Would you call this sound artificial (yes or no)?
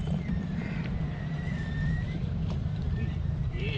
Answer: yes